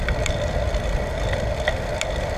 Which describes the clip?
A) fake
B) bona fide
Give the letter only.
A